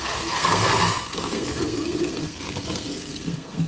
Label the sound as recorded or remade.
remade